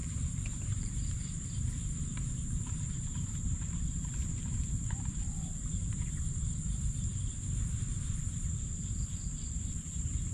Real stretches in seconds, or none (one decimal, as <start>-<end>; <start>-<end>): 7.1-8.2